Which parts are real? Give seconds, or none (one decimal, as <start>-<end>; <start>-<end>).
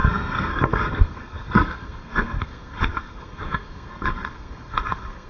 none